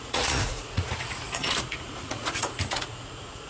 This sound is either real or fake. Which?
fake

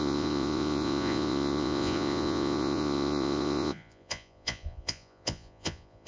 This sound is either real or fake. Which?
fake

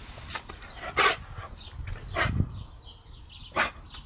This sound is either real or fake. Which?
real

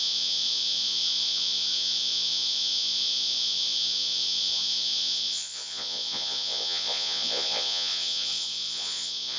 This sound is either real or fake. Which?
fake